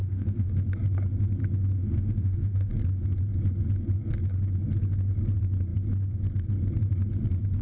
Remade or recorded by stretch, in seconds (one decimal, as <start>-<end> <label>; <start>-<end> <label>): 0.0-0.5 remade; 0.5-1.8 recorded; 1.8-2.7 remade; 2.7-7.6 recorded